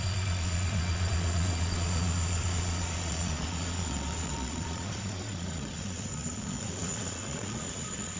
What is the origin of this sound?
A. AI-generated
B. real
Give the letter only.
A